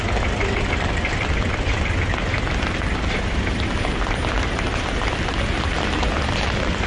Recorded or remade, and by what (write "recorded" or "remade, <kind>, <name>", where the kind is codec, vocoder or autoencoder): recorded